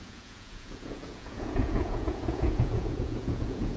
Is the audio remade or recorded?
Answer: remade